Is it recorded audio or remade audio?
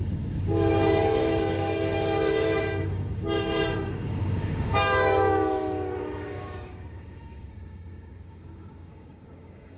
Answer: remade